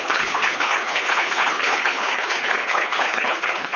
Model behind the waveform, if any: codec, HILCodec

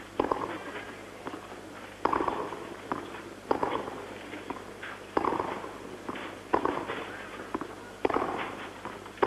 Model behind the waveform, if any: none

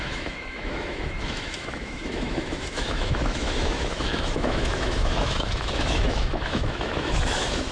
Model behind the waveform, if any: autoencoder, DAC-VAE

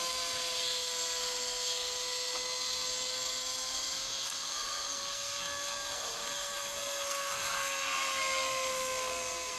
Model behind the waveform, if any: codec, SNAC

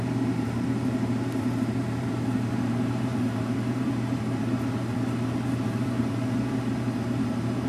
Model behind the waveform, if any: vocoder, BigVGAN v2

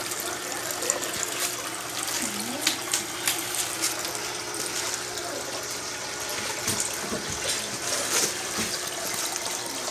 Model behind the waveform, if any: none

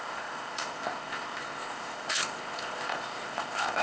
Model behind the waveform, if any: codec, ZipCodec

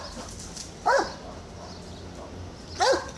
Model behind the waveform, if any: none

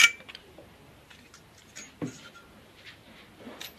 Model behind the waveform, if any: none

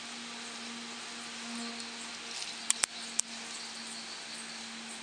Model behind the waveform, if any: none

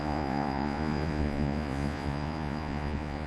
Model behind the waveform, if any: vocoder, Vocos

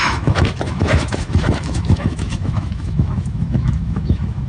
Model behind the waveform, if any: autoencoder, DAC-VAE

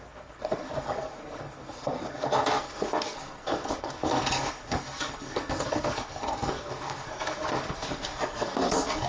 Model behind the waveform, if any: codec, SNAC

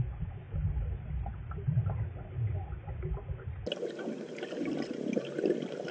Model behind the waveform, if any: none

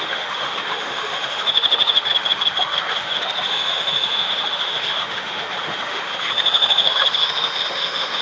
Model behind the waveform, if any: autoencoder, DAC-VAE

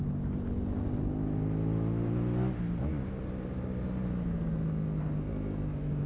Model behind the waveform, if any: none